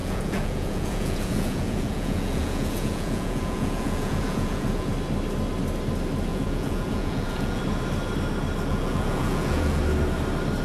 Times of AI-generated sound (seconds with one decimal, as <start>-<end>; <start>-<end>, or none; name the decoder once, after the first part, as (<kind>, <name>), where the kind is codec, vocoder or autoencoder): 0.0-4.9 (vocoder, Vocos); 6.3-7.6; 8.7-9.8